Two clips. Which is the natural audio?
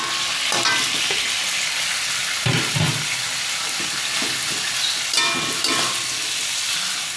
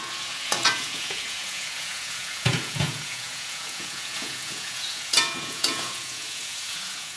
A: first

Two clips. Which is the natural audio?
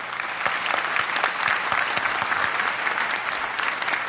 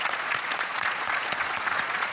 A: first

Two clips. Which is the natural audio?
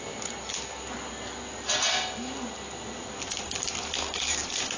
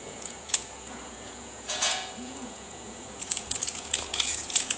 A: first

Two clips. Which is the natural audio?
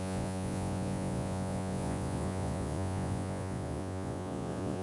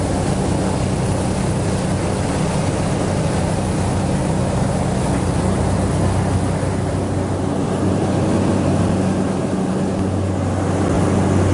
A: second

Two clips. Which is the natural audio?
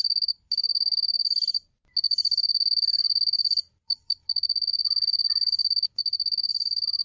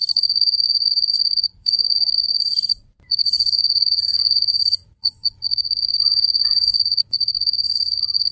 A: first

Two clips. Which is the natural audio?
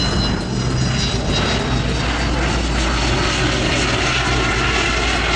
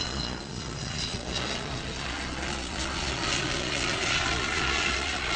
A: first